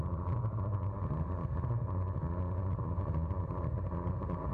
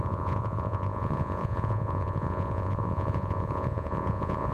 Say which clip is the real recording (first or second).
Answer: first